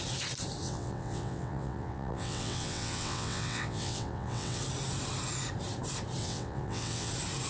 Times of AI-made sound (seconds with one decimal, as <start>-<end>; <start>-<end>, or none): 0.6-4.6; 6.2-7.1